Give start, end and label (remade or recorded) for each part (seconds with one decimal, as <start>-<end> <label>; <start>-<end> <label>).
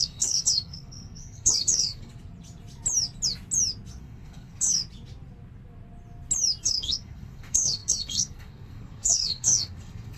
0.0-2.1 remade; 2.1-4.0 recorded; 4.0-4.8 remade; 4.8-6.6 recorded; 6.6-10.2 remade